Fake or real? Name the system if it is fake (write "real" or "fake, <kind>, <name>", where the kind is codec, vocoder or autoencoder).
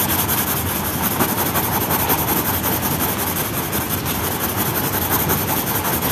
real